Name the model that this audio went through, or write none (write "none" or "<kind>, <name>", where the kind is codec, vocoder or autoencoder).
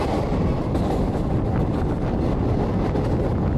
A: none